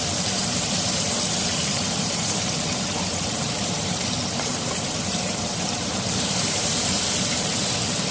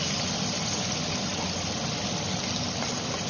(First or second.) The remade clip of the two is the first